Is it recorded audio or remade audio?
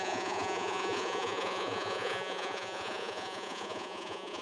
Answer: remade